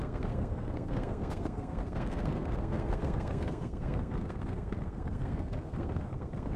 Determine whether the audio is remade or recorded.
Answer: remade